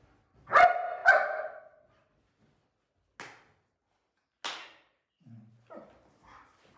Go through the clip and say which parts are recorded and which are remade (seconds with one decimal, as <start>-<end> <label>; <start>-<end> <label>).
0.0-6.8 recorded